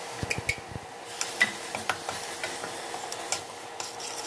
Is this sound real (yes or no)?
yes